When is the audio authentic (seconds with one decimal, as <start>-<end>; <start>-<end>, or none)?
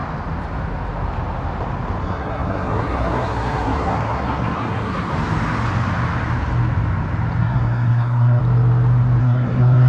0.0-2.0; 5.1-7.4; 8.4-9.2